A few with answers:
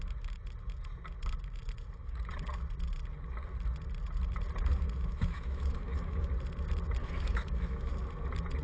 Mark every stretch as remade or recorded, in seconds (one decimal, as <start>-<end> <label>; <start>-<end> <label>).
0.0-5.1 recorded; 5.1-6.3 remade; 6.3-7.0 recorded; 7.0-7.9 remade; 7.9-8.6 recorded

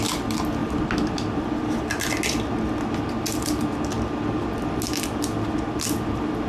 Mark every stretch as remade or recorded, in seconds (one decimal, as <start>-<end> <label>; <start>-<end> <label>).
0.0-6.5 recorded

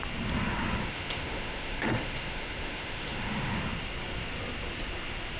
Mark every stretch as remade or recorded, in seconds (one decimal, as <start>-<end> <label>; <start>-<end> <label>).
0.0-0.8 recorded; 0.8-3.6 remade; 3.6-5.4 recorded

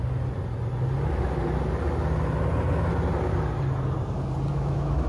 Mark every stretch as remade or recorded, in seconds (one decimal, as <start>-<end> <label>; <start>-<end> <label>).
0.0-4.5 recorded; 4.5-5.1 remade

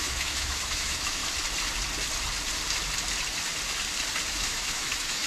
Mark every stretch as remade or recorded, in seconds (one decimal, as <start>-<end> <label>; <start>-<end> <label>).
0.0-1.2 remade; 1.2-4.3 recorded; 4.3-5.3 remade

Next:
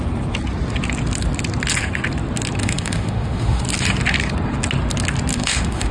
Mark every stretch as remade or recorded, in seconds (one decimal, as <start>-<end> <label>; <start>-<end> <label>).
0.0-2.6 recorded; 2.6-3.6 remade; 3.6-5.3 recorded; 5.3-5.9 remade